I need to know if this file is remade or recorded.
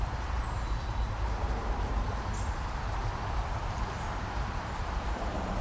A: remade